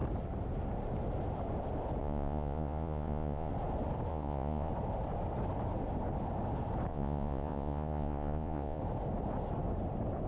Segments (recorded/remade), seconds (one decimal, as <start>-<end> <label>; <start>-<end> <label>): 0.0-2.0 recorded; 2.0-3.5 remade; 3.5-4.1 recorded; 4.1-4.7 remade; 4.7-6.9 recorded; 6.9-8.8 remade; 8.8-10.3 recorded